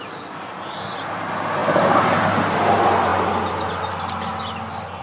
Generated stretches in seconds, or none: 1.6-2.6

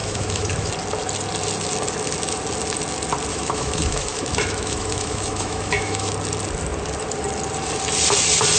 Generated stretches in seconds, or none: 0.0-0.7; 3.3-6.1

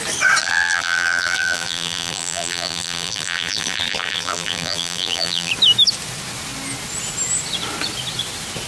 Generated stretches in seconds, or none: 0.4-5.5